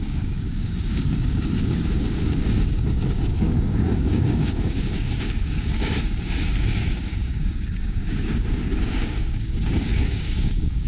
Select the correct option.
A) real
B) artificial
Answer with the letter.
B